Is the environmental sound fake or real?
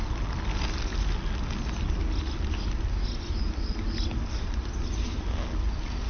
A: real